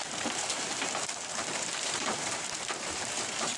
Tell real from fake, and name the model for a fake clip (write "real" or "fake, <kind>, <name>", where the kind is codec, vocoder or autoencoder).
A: fake, vocoder, BigVGAN v2